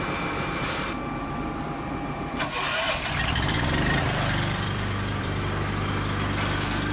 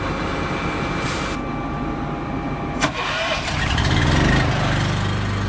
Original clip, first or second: second